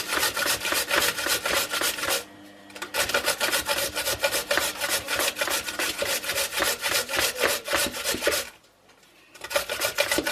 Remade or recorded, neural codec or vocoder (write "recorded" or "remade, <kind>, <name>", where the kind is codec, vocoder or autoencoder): recorded